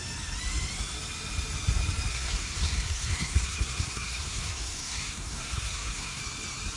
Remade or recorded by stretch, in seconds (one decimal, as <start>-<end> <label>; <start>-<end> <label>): 0.0-2.1 recorded; 2.1-6.2 remade; 6.2-6.8 recorded